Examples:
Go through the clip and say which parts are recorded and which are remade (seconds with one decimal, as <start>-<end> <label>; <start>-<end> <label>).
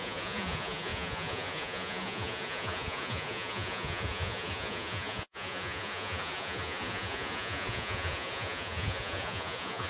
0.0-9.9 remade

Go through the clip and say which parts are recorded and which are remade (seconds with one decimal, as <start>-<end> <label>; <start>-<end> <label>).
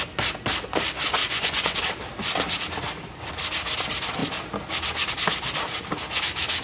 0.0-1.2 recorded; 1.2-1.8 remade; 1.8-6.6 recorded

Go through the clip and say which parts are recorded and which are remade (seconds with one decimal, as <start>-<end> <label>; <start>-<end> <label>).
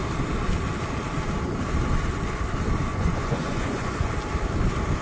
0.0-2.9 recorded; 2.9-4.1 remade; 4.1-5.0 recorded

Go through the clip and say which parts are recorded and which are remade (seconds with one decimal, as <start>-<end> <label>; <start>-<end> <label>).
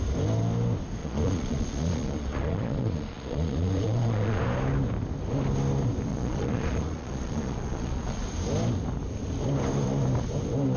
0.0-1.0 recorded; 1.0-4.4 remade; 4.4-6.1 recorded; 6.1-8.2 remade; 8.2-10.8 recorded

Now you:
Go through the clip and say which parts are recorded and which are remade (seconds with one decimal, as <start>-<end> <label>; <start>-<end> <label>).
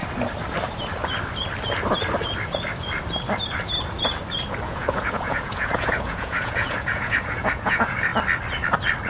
0.0-4.6 recorded; 4.6-8.1 remade; 8.1-9.1 recorded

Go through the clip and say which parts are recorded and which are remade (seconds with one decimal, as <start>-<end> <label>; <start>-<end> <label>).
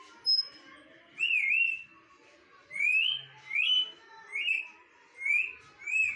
0.0-6.2 recorded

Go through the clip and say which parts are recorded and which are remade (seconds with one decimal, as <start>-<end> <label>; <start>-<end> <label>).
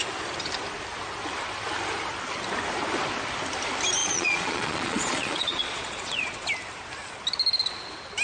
0.0-4.0 recorded; 4.0-6.5 remade; 6.5-8.2 recorded